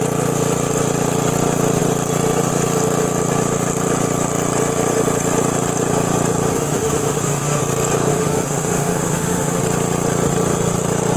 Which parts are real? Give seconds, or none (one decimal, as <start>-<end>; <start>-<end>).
0.0-6.5; 7.6-8.1; 9.6-11.2